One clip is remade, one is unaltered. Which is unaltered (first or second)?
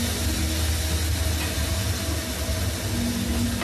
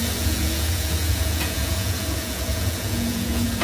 first